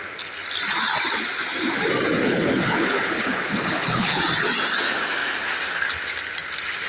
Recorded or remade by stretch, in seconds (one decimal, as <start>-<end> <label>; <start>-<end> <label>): 0.0-2.2 recorded; 2.2-4.2 remade; 4.2-6.9 recorded